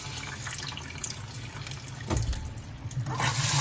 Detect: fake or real real